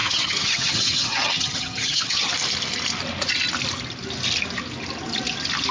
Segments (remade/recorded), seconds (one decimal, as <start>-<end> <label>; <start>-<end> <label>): 0.0-2.3 remade; 2.3-5.7 recorded